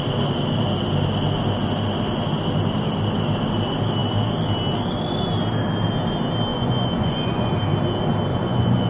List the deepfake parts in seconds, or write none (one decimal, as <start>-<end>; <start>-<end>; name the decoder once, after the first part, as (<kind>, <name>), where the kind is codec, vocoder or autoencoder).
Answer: 6.5-7.5 (vocoder, Vocos); 8.3-8.9